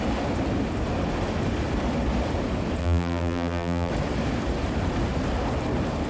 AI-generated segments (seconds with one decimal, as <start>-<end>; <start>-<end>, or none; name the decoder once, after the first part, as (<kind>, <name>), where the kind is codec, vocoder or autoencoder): 2.8-3.9 (vocoder, BigVGAN v2)